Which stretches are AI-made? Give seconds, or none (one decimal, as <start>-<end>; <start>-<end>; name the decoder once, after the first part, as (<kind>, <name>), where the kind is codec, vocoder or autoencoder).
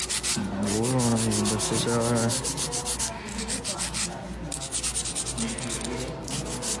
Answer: none